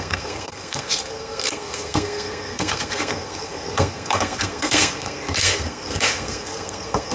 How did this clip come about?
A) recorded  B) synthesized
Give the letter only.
B